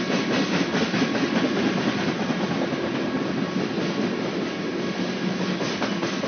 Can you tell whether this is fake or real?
real